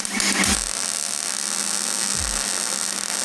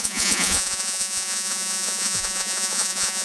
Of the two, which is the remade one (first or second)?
second